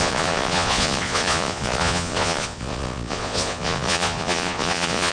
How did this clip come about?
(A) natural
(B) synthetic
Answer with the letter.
B